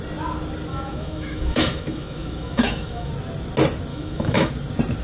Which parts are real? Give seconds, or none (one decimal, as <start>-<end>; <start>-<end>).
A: 0.0-0.7; 3.1-3.9; 4.5-5.0